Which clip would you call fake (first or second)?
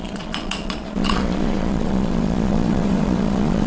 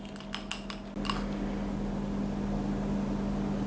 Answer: first